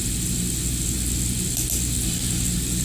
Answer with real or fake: real